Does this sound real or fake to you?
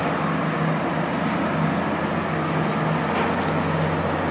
real